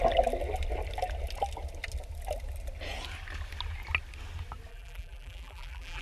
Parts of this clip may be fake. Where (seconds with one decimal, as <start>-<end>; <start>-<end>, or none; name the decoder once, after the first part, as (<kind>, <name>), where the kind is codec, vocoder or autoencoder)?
4.7-6.0 (vocoder, BigVGAN v2)